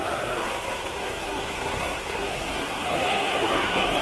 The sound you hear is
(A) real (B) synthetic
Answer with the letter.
B